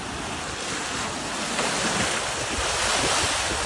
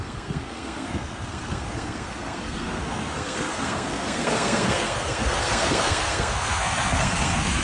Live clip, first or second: first